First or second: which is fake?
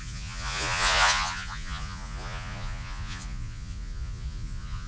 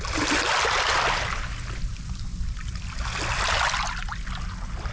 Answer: first